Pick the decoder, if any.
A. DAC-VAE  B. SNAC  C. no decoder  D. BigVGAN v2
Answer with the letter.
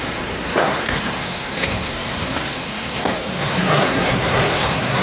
B